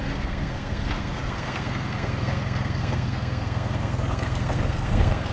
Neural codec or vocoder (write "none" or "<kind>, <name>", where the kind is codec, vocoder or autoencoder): codec, SNAC